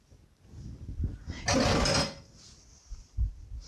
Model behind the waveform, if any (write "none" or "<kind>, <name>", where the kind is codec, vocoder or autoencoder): none